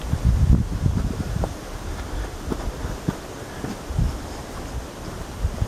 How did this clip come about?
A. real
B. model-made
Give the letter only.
A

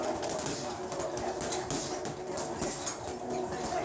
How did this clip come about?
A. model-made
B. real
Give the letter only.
B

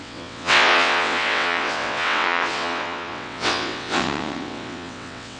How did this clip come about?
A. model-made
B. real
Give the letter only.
A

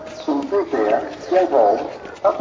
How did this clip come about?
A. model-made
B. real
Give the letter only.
B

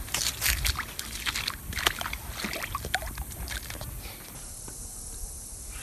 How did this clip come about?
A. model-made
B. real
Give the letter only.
B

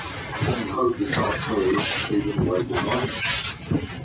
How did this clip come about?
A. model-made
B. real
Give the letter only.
B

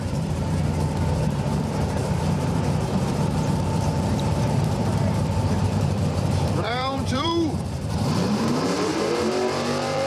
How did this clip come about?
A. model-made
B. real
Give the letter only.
A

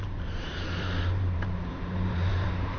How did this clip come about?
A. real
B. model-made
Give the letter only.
B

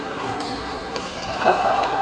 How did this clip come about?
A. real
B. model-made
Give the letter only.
B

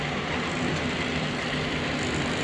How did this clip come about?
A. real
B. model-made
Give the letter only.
A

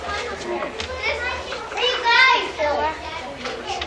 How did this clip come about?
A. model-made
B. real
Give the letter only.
B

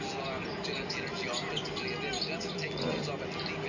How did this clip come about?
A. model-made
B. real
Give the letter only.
B